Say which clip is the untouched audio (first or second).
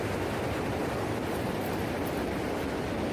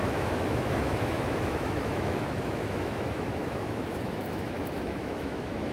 first